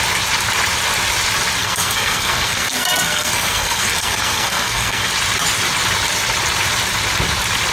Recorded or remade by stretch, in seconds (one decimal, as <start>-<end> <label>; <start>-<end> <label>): 0.0-1.6 recorded; 1.6-5.1 remade; 5.1-7.7 recorded